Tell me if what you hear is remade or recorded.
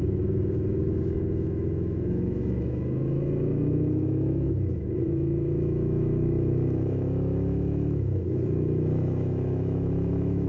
remade